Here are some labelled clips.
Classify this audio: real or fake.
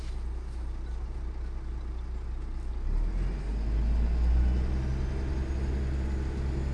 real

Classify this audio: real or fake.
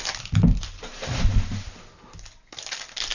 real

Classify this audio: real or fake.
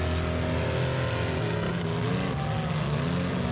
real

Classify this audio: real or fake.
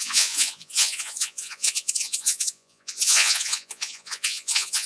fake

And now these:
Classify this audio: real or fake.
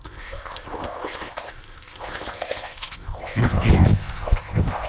fake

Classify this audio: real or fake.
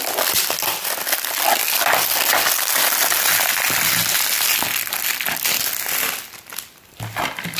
real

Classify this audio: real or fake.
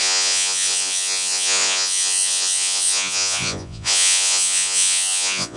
fake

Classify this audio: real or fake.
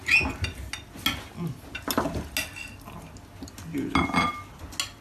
real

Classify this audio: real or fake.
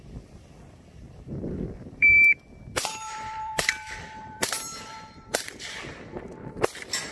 fake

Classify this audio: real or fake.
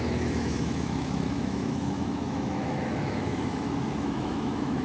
fake